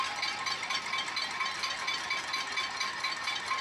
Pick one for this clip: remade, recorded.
recorded